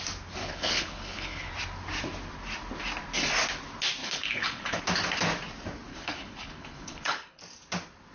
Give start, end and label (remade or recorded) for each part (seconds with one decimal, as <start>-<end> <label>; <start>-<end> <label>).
0.0-0.4 recorded; 0.4-1.5 remade; 1.5-4.0 recorded; 4.0-4.8 remade; 4.8-5.9 recorded; 5.9-7.4 remade; 7.4-8.1 recorded